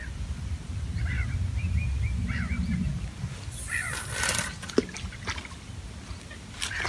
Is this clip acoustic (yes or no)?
yes